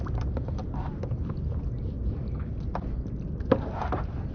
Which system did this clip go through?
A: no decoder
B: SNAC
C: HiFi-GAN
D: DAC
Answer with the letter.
A